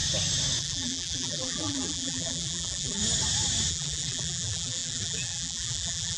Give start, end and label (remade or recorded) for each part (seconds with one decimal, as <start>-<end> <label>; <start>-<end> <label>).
0.0-0.6 recorded; 0.6-3.0 remade; 3.0-3.7 recorded; 3.7-6.2 remade